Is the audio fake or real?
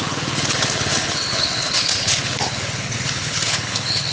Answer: fake